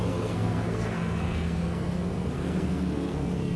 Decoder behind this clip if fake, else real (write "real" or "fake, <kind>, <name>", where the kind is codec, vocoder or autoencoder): fake, codec, SNAC